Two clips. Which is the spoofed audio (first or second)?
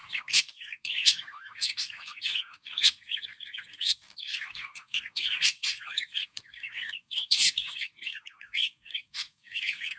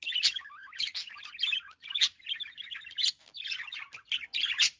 first